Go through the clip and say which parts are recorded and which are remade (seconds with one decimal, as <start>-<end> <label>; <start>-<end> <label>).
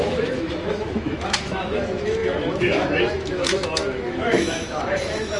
0.0-5.4 remade